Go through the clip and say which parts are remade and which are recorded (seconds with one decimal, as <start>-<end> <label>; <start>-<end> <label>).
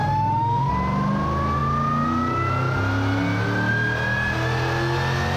0.0-0.7 remade; 0.7-5.4 recorded